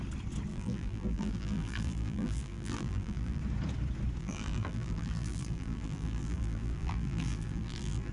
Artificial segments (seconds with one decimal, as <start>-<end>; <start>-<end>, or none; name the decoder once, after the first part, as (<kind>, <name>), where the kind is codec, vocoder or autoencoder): 0.5-3.4 (vocoder, BigVGAN v2); 4.2-8.1